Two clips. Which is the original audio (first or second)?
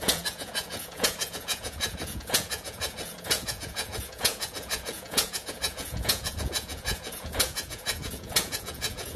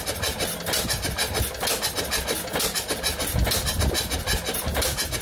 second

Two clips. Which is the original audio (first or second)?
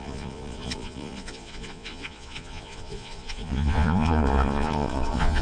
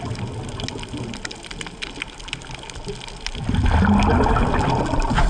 second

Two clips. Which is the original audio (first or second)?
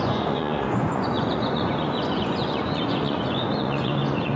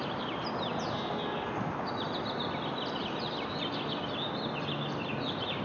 second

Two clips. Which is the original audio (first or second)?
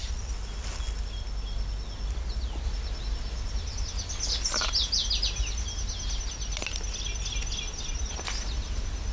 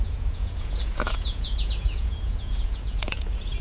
first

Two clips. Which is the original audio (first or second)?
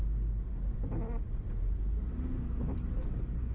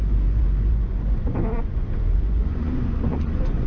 first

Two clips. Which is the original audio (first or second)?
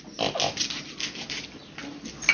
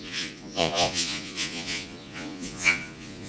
first